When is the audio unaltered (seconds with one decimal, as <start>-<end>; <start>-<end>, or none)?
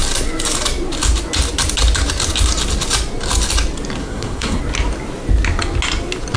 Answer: 0.0-4.0; 4.6-6.4